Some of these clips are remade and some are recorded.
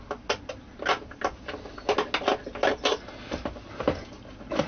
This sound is recorded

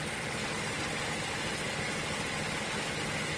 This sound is recorded